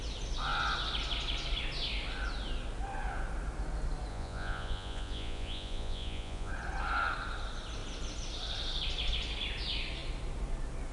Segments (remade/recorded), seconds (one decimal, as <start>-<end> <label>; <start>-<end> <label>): 0.0-4.1 recorded; 4.1-6.5 remade; 6.5-10.9 recorded